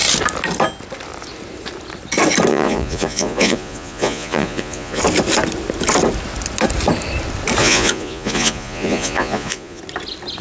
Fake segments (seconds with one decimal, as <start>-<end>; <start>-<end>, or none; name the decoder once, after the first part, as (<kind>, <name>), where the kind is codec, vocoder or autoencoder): 2.5-5.0 (vocoder, Vocos); 7.6-9.8